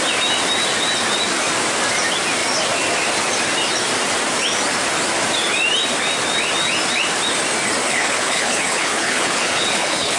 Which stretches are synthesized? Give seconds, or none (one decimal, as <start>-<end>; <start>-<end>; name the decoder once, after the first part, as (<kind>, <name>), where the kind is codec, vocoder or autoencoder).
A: 7.8-10.2 (codec, HILCodec)